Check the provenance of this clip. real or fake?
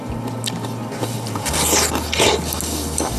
real